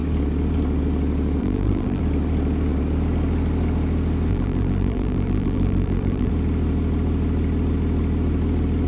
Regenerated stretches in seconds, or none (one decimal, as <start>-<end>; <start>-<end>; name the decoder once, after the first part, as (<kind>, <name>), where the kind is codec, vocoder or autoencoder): 1.4-2.0 (vocoder, BigVGAN v2); 4.3-6.3